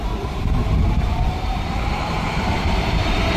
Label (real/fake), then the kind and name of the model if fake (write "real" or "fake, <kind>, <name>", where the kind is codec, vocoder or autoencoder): fake, vocoder, BigVGAN v2